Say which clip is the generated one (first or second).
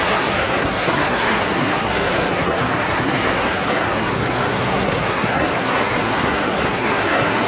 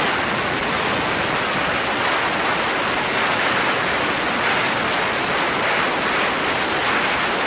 first